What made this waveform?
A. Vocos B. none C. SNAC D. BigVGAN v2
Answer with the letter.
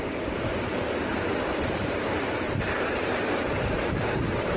D